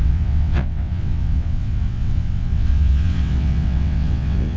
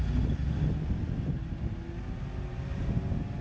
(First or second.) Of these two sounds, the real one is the second